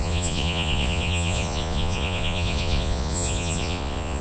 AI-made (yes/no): yes